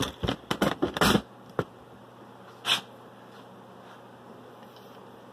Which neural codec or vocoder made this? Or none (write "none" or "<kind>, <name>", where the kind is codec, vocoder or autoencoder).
none